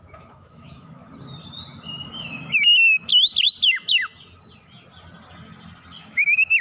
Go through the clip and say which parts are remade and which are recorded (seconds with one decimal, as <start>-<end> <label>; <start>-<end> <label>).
0.0-1.0 remade; 1.0-2.2 recorded; 2.2-3.1 remade; 3.1-6.0 recorded; 6.0-6.6 remade